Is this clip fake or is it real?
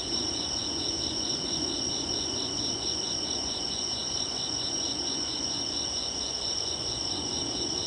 fake